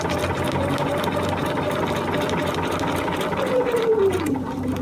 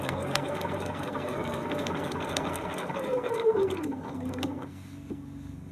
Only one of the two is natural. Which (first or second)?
first